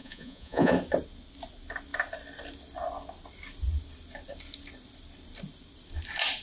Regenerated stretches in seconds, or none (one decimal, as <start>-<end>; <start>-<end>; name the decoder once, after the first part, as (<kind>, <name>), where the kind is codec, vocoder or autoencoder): 0.0-0.7 (vocoder, Vocos)